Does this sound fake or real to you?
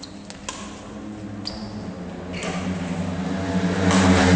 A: real